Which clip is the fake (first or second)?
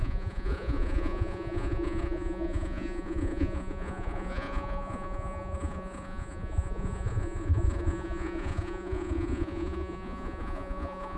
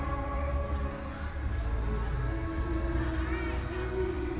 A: first